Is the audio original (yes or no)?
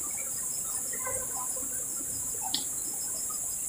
no